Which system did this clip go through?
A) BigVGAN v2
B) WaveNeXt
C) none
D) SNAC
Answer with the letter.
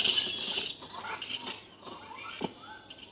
C